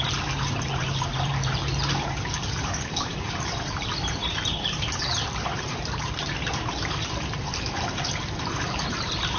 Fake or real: fake